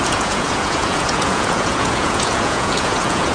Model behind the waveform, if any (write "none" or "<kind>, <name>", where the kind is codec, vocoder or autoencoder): vocoder, Vocos